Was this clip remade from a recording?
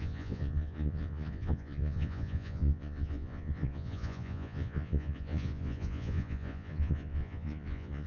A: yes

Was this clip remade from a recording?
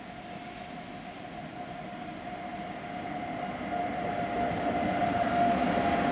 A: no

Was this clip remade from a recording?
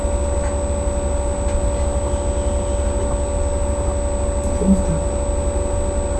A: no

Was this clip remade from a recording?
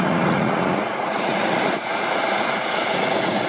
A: yes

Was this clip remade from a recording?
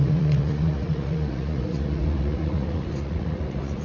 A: yes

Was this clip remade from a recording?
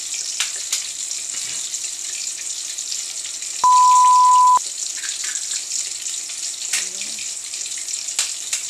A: no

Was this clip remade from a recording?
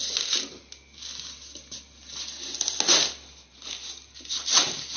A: no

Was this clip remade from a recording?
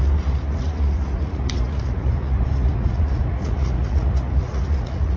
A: yes